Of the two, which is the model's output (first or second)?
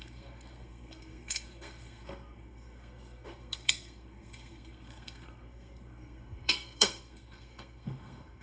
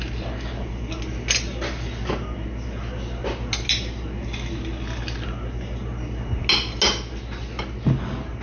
first